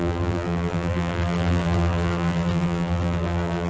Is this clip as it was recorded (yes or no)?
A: no